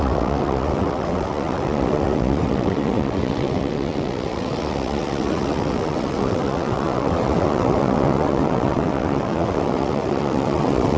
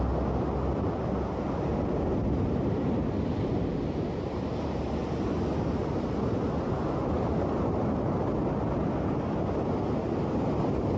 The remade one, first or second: first